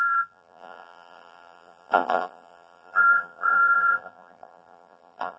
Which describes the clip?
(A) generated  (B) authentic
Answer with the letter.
A